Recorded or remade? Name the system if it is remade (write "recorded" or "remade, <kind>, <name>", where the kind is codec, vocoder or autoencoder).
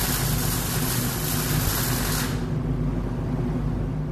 recorded